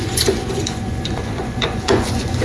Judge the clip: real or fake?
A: fake